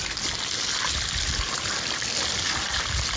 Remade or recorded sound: recorded